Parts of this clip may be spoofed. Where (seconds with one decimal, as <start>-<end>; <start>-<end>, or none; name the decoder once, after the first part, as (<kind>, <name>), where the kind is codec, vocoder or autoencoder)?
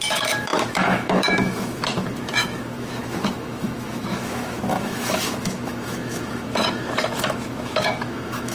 0.0-8.5 (autoencoder, DAC-VAE)